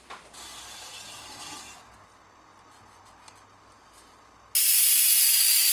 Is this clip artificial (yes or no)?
no